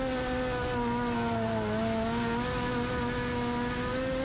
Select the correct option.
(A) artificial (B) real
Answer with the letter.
B